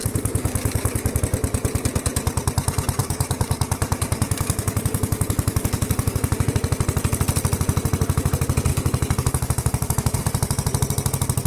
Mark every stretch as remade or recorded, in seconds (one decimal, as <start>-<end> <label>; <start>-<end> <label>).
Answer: 0.0-1.2 remade; 1.2-3.0 recorded; 3.0-6.5 remade; 6.5-8.7 recorded; 8.7-10.2 remade; 10.2-11.5 recorded